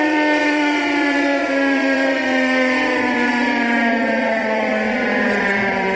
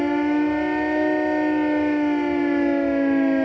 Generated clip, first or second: first